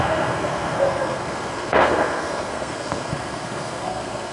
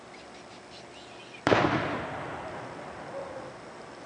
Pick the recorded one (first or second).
second